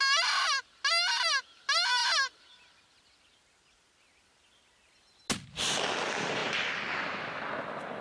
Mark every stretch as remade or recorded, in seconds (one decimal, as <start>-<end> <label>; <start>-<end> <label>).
0.0-8.0 recorded

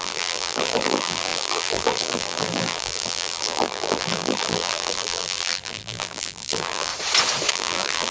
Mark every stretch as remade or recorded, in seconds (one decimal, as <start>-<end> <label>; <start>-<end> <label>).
0.0-6.9 remade; 6.9-7.5 recorded; 7.5-8.1 remade

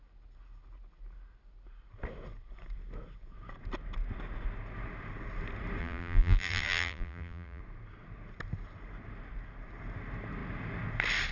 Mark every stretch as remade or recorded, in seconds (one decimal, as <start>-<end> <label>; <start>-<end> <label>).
0.0-5.8 recorded; 5.8-7.6 remade; 7.6-11.3 recorded

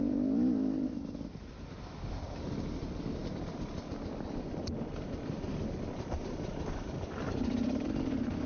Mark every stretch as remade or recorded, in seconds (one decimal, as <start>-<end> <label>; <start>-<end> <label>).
0.0-8.5 remade

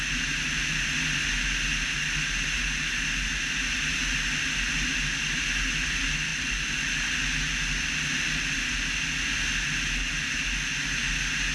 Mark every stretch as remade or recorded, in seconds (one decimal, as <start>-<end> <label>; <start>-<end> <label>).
0.0-6.3 recorded; 6.3-6.8 remade; 6.8-11.5 recorded

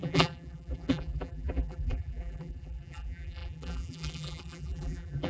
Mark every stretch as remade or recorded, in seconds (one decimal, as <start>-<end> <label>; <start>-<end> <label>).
0.0-5.3 remade